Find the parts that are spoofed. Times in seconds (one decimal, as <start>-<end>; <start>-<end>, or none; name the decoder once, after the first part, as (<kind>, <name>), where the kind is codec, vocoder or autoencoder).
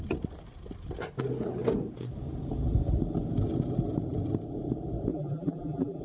5.1-6.0 (vocoder, BigVGAN v2)